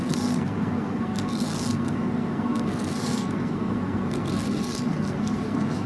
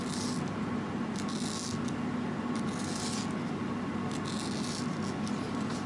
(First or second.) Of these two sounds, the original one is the second